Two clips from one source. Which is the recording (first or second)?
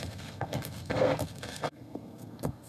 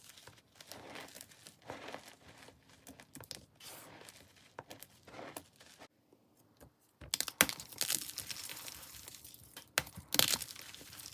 second